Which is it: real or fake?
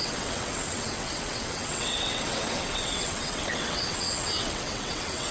fake